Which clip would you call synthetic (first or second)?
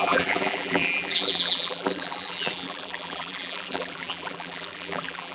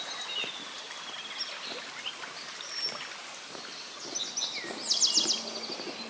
first